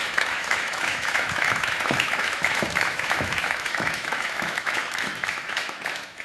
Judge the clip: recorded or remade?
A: remade